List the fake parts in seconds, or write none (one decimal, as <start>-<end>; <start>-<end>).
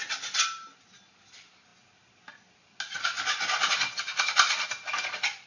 none